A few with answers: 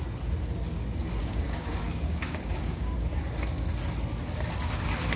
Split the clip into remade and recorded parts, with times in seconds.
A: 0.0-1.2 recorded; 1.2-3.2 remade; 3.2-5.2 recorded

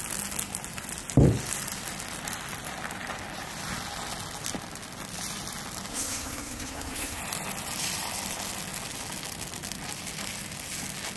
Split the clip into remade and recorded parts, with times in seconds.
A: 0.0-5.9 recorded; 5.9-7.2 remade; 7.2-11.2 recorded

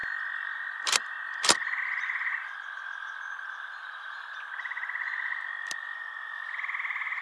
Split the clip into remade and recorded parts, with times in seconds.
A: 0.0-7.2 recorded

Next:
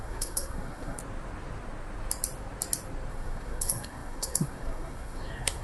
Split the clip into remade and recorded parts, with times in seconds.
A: 0.0-1.0 remade; 1.0-3.1 recorded; 3.1-5.6 remade